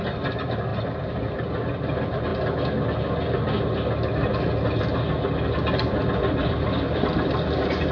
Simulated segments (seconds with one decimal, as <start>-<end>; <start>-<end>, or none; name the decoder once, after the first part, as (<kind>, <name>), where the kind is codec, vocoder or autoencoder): 0.0-2.3 (vocoder, BigVGAN v2); 7.0-7.9